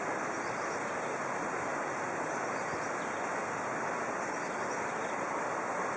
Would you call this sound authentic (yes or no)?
yes